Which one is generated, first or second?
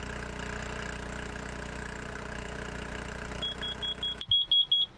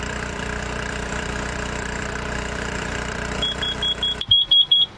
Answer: second